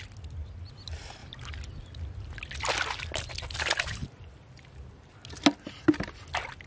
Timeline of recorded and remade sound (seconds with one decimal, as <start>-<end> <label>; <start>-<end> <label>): 0.0-4.0 recorded; 4.0-5.1 remade; 5.1-6.7 recorded